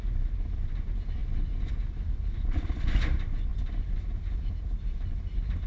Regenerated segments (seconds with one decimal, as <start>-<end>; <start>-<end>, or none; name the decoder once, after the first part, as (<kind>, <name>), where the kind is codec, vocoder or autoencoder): none

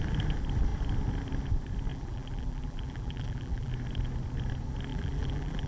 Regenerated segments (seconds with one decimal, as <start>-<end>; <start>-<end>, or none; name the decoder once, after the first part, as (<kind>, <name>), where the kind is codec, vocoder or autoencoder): 1.9-3.7 (vocoder, BigVGAN v2); 4.9-5.7

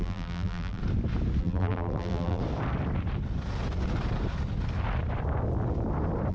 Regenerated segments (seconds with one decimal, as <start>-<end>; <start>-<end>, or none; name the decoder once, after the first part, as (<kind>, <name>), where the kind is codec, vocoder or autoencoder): 0.0-0.8 (vocoder, BigVGAN v2); 1.4-2.4